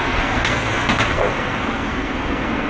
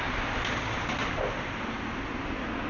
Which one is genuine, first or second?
second